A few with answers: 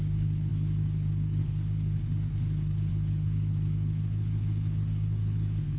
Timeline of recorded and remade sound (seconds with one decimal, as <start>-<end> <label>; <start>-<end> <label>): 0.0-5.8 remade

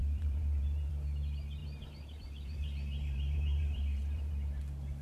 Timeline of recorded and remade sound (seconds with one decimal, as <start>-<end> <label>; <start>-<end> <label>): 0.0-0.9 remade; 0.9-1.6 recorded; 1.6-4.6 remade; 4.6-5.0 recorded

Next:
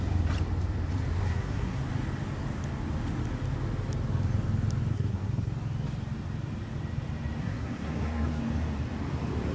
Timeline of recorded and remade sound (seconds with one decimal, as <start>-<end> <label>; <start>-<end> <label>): 0.0-1.2 recorded; 1.2-1.8 remade; 1.8-4.9 recorded; 4.9-5.5 remade; 5.5-7.4 recorded; 7.4-8.4 remade; 8.4-9.5 recorded

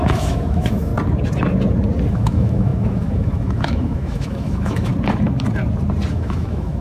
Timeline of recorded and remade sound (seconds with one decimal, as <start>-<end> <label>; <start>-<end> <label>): 0.0-0.9 remade; 0.9-2.1 recorded; 2.1-4.9 remade; 4.9-6.1 recorded; 6.1-6.8 remade